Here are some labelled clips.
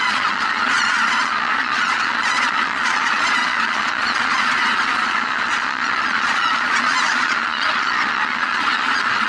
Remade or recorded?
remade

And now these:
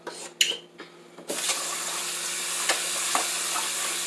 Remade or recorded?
recorded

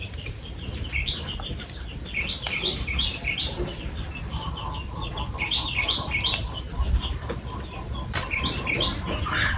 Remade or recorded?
remade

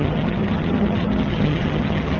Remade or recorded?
remade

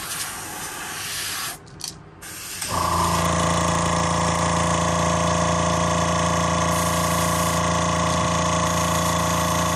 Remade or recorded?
recorded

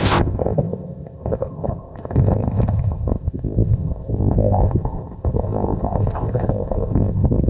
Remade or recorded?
remade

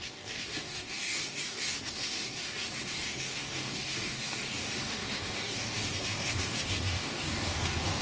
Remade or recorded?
remade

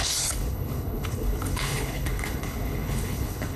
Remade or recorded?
remade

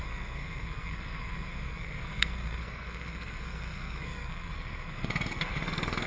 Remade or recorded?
remade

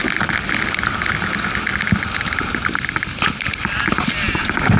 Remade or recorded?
recorded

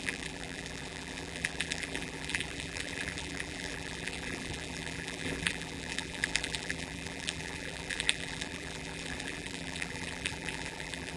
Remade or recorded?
remade